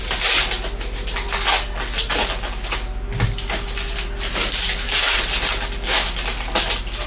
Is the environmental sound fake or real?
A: real